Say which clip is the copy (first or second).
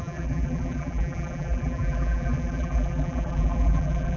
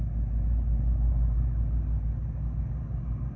first